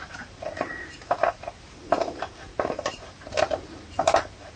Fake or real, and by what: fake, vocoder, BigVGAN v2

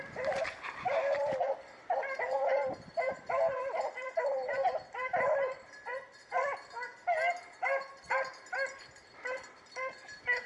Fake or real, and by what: real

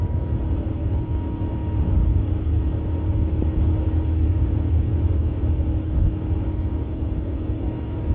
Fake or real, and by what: real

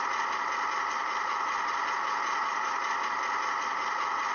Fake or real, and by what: real